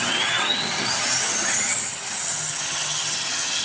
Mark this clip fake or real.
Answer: fake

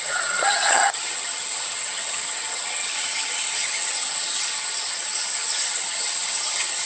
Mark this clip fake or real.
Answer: fake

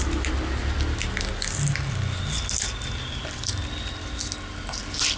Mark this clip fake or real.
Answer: real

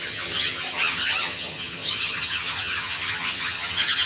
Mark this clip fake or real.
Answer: fake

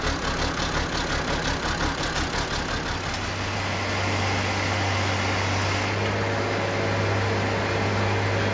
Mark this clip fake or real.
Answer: real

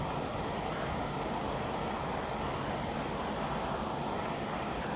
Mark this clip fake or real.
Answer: real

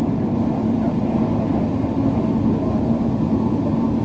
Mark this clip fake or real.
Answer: real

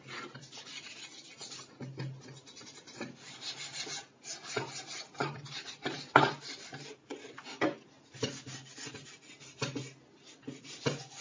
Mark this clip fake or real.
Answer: real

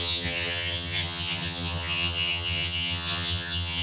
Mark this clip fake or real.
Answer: fake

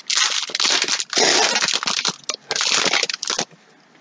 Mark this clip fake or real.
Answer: real